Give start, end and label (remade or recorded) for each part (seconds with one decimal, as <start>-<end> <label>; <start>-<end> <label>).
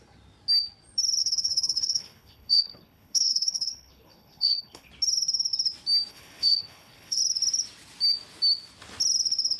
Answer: 0.0-1.2 recorded; 1.2-4.9 remade; 4.9-6.1 recorded; 6.1-7.2 remade; 7.2-9.6 recorded